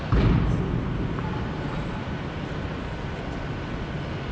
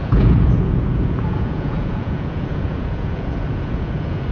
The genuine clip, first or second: first